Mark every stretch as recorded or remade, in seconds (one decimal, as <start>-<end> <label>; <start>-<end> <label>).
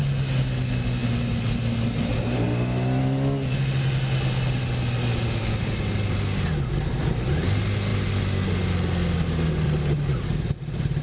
0.0-11.0 recorded